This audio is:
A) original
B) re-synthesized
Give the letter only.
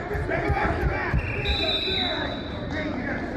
A